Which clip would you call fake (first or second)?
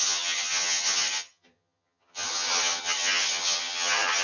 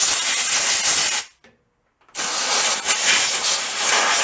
first